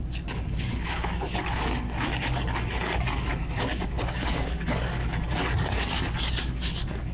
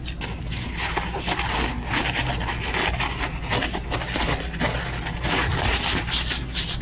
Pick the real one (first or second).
second